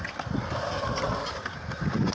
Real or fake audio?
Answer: real